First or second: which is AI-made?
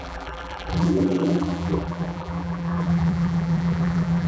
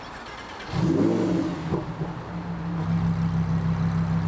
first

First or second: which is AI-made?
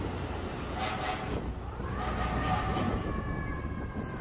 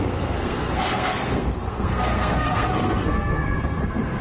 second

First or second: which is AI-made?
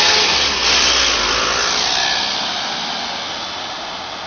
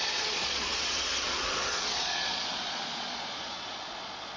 second